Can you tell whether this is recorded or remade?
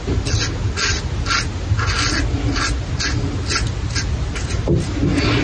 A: recorded